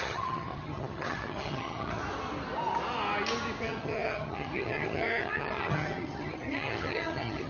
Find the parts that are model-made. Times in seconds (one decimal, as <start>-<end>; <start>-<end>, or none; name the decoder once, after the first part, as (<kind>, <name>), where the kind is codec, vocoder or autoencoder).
0.0-2.0 (vocoder, HiFi-GAN); 3.6-7.5